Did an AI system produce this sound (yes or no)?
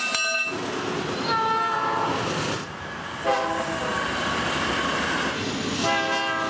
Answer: no